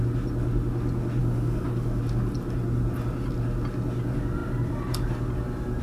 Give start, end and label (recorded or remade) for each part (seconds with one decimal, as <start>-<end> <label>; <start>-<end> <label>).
0.0-1.2 recorded; 1.2-2.0 remade; 2.0-5.8 recorded